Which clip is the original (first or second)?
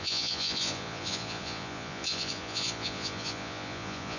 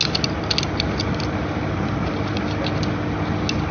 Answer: second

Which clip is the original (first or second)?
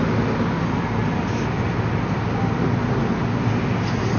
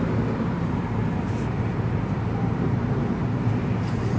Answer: first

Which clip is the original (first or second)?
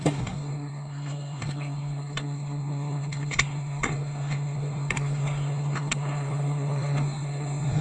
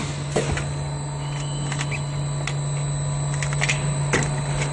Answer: second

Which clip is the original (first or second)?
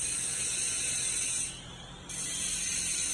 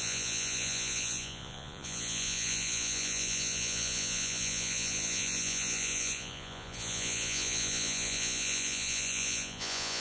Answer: first